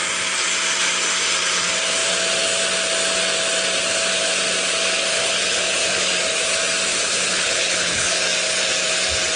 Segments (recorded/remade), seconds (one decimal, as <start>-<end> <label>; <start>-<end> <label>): 0.0-5.1 recorded; 5.1-6.1 remade; 6.1-6.9 recorded; 6.9-8.2 remade; 8.2-9.4 recorded